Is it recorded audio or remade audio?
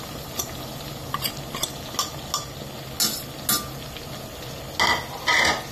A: recorded